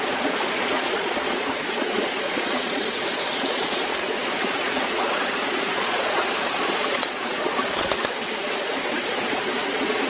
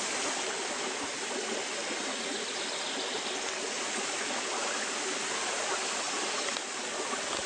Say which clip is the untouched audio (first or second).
second